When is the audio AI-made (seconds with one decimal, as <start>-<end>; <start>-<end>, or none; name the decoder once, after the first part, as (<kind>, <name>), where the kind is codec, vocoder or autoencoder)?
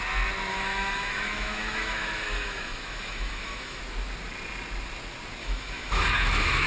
0.5-3.8 (autoencoder, DAC-VAE); 5.4-6.7